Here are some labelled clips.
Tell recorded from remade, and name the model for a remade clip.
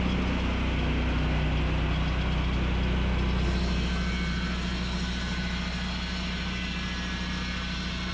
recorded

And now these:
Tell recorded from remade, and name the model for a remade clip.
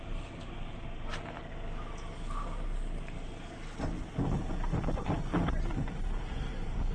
recorded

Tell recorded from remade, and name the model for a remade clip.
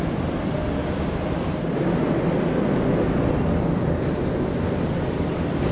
remade, vocoder, BigVGAN v2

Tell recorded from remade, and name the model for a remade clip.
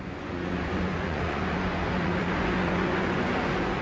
remade, vocoder, Vocos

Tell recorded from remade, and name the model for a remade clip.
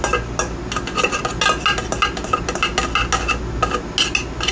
recorded